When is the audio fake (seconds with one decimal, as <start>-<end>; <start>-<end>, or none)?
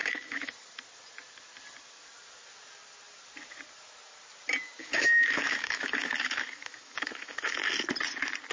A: 0.0-0.5; 4.8-7.6